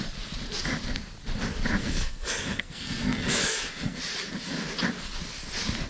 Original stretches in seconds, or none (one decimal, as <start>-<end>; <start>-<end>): 0.0-1.8; 4.0-5.9